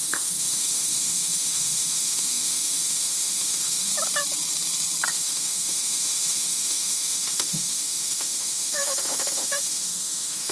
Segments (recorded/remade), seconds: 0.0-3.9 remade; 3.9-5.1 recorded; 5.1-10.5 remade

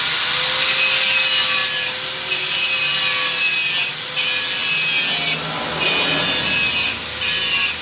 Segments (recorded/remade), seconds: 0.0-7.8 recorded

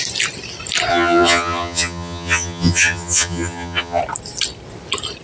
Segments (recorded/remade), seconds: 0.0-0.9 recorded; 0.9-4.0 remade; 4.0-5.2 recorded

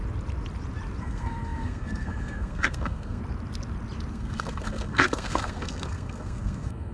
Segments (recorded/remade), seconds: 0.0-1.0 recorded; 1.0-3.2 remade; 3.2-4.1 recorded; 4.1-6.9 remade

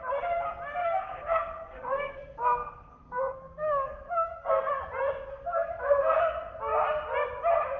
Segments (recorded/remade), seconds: 0.0-0.8 recorded; 0.8-4.7 remade; 4.7-5.3 recorded; 5.3-6.2 remade; 6.2-7.8 recorded